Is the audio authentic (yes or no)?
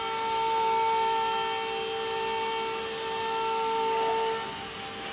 yes